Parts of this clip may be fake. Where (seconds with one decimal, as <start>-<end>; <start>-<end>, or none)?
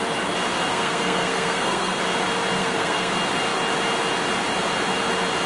0.7-2.0; 2.6-3.1